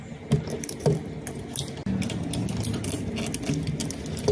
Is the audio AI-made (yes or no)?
no